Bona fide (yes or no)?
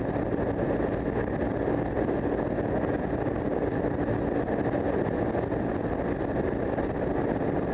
yes